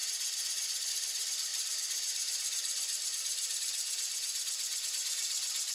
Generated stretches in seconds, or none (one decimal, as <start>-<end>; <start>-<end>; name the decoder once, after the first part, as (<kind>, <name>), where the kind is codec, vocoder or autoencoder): 0.9-1.5 (vocoder, BigVGAN v2); 4.9-5.7